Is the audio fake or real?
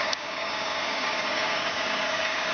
fake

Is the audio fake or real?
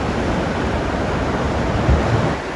real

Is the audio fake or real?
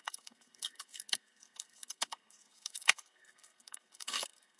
fake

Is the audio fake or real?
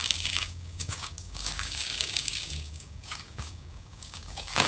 fake